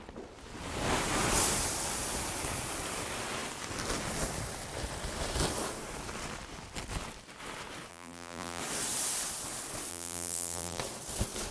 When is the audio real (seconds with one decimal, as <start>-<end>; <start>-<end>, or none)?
0.0-7.9; 8.6-9.9; 10.8-11.5